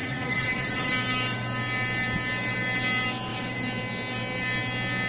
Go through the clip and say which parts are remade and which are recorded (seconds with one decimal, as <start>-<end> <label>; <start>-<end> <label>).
0.0-0.9 remade; 0.9-5.1 recorded